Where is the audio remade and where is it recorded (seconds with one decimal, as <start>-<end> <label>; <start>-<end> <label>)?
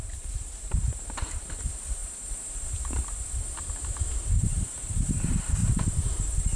0.0-2.0 remade; 2.0-4.9 recorded; 4.9-5.6 remade; 5.6-6.1 recorded; 6.1-6.6 remade